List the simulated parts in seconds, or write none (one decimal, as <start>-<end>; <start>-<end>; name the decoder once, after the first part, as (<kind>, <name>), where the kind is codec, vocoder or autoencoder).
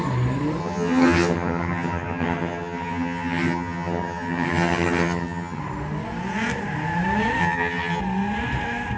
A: 0.6-5.6 (vocoder, HiFi-GAN); 7.4-8.0